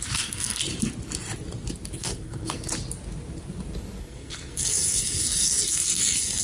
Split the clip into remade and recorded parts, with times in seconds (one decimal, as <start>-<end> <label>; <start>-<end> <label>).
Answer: 0.0-0.6 remade; 0.6-2.0 recorded; 2.0-2.7 remade; 2.7-4.0 recorded; 4.0-6.4 remade